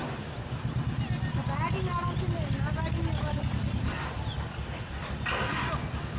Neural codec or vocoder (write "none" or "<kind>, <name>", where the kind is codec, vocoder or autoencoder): none